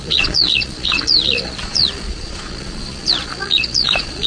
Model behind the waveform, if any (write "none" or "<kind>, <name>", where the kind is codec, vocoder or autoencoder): vocoder, Vocos